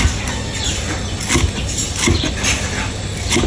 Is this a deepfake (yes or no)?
no